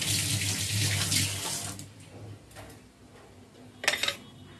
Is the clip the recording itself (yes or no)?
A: yes